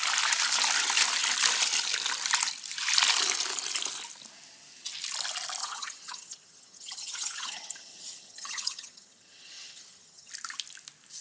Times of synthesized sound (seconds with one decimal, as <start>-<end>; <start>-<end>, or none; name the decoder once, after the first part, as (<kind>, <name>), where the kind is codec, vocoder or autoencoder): 5.6-10.3 (vocoder, HiFi-GAN)